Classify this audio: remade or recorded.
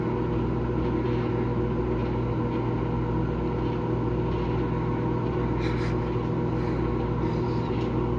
recorded